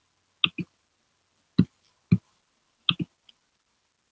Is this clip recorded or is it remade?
recorded